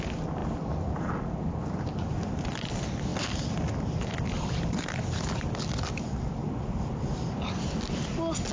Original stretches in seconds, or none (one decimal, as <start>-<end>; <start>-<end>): 0.0-0.4; 1.1-3.1; 7.0-8.5